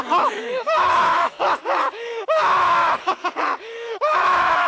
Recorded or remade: remade